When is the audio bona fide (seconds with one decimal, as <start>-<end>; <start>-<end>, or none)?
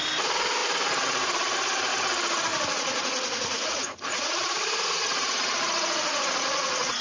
0.0-2.5; 4.3-5.1